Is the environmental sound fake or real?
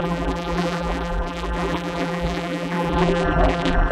fake